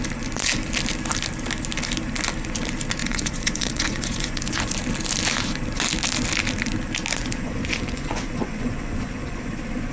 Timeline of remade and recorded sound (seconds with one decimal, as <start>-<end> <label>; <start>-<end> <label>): 0.0-3.0 recorded; 3.0-4.7 remade; 4.7-7.2 recorded; 7.2-9.5 remade; 9.5-9.9 recorded